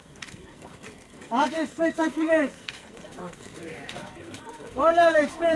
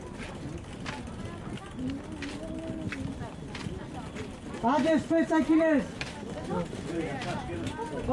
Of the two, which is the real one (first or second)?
second